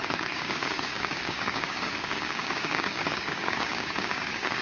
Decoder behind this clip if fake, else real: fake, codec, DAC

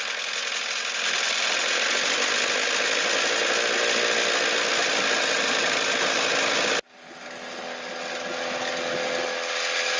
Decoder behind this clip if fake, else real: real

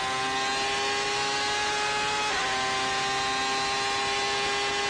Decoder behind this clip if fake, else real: real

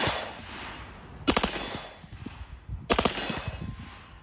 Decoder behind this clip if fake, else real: real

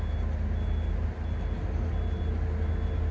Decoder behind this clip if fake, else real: real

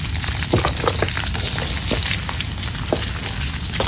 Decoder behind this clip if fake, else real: real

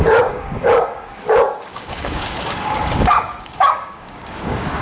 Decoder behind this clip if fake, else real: fake, codec, DAC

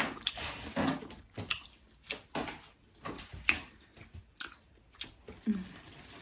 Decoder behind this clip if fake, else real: real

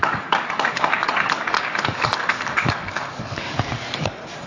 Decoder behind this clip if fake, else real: fake, codec, DAC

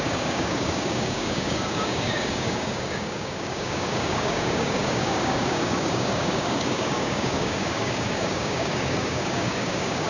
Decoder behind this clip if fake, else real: fake, codec, DAC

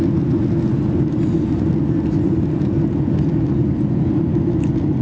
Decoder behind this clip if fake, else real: real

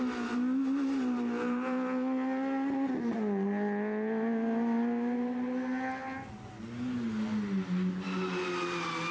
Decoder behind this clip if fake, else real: real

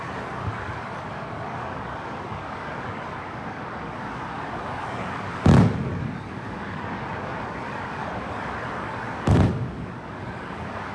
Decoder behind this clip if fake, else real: fake, codec, DAC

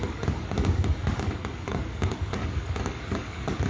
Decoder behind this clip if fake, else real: fake, codec, DAC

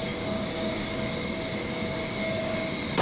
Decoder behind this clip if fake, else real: fake, codec, DAC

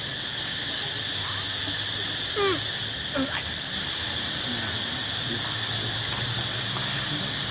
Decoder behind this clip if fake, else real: real